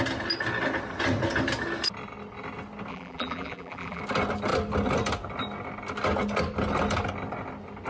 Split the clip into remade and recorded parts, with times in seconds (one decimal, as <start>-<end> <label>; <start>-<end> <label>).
0.0-2.9 recorded; 2.9-4.0 remade; 4.0-7.9 recorded